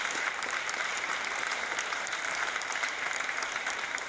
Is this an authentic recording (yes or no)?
no